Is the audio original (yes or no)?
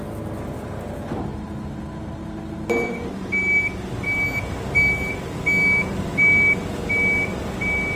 yes